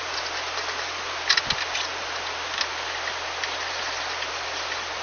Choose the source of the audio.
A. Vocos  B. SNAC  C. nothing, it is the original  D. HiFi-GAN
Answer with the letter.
C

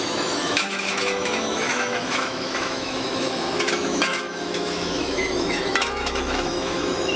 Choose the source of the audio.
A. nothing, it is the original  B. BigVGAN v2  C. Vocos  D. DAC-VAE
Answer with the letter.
D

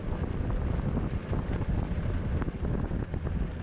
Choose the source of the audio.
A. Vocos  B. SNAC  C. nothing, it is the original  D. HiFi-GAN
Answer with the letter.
C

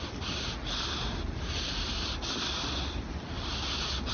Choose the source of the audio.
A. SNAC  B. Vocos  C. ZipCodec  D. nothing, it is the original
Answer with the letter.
D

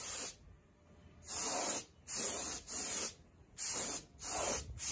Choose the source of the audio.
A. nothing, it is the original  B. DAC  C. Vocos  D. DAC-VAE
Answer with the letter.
A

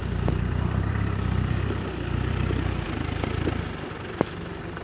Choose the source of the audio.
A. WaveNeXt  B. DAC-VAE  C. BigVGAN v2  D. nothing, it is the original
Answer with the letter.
C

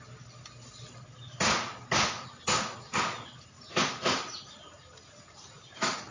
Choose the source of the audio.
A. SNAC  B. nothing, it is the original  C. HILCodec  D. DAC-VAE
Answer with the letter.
B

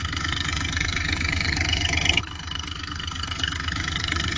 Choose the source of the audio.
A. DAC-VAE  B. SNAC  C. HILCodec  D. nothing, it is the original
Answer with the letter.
B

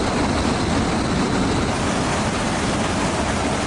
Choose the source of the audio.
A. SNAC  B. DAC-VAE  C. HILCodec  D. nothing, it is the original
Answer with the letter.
D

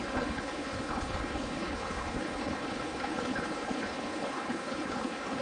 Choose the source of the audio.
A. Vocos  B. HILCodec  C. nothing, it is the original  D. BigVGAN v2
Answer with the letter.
B